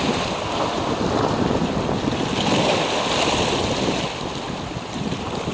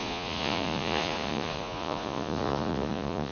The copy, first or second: second